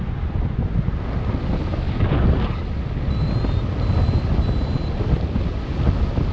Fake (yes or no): no